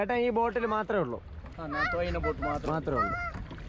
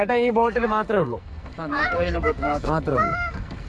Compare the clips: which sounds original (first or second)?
first